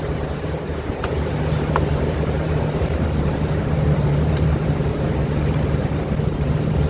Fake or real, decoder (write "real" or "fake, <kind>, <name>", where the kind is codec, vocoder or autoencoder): fake, vocoder, BigVGAN v2